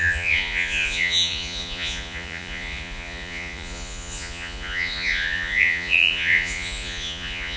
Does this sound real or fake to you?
fake